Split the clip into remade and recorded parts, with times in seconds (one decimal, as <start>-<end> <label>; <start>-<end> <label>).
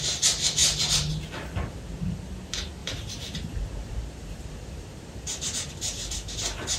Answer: 0.0-0.6 recorded; 0.6-1.2 remade; 1.2-2.8 recorded; 2.8-6.8 remade